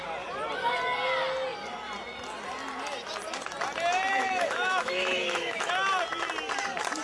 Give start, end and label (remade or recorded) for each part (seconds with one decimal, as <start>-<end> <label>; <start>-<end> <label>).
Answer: 0.0-4.1 recorded; 4.1-5.7 remade; 5.7-7.0 recorded